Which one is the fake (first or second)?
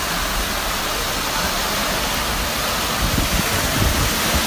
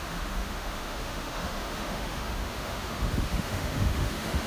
second